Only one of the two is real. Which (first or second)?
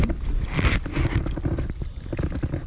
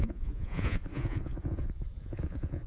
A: first